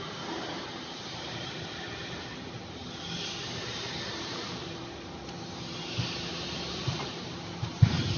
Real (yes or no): no